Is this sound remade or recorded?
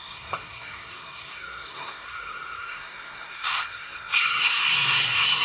remade